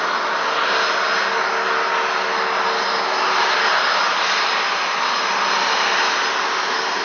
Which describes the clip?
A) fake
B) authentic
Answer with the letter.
B